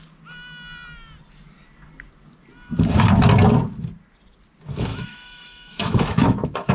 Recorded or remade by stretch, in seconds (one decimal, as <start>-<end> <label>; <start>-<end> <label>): 0.0-4.9 recorded; 4.9-6.7 remade